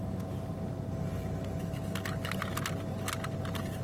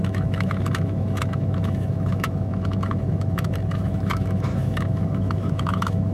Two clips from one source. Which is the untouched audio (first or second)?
first